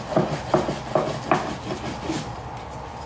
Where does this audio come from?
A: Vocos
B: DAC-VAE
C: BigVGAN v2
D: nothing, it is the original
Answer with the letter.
D